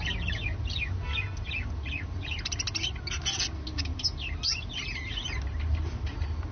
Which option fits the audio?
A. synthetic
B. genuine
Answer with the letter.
B